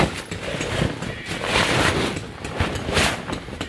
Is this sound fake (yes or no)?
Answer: no